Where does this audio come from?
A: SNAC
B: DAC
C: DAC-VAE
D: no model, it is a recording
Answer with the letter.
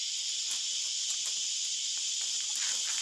D